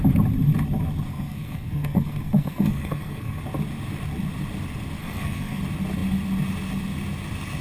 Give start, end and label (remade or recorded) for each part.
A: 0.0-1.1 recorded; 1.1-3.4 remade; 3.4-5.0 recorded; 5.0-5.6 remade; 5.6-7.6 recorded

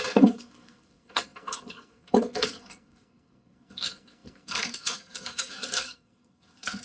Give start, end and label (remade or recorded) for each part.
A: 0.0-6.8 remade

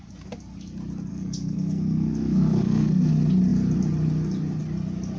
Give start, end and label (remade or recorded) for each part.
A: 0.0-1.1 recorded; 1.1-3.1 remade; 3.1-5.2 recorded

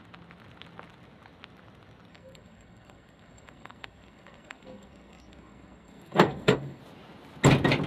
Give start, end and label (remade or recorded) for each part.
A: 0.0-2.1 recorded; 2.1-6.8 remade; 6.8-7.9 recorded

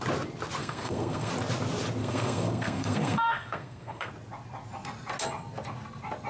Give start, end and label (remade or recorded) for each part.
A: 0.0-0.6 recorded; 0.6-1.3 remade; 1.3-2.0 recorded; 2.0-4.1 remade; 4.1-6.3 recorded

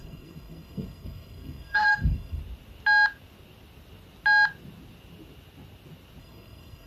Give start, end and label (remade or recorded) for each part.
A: 0.0-2.4 remade; 2.4-6.2 recorded; 6.2-6.9 remade

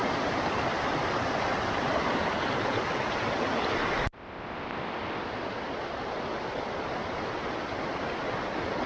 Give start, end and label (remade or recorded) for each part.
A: 0.0-8.9 recorded